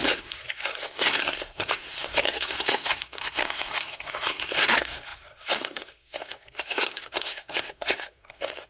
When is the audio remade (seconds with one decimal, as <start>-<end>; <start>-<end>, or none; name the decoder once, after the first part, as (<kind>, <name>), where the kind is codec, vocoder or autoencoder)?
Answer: 0.0-8.7 (codec, SNAC)